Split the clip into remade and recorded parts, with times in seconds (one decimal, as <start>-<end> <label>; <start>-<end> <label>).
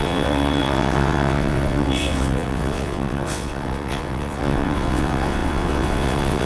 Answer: 0.0-6.4 remade